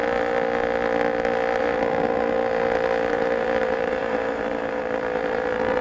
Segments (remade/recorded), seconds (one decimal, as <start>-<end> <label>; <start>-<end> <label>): 0.0-1.6 recorded; 1.6-2.4 remade; 2.4-3.1 recorded; 3.1-5.8 remade